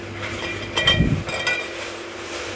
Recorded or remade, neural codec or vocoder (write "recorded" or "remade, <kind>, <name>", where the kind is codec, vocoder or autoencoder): recorded